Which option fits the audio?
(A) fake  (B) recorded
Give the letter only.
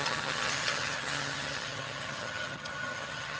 A